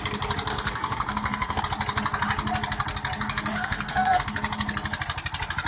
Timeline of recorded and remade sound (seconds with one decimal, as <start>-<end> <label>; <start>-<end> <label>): 0.0-0.5 recorded; 0.5-1.6 remade; 1.6-3.5 recorded; 3.5-4.2 remade; 4.2-5.7 recorded